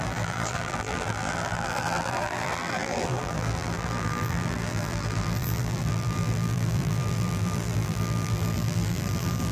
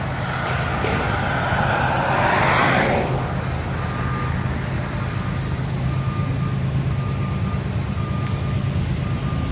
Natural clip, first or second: second